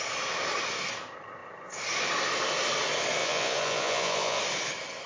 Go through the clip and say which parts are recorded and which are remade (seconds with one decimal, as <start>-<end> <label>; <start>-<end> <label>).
0.0-3.2 recorded; 3.2-4.4 remade; 4.4-5.1 recorded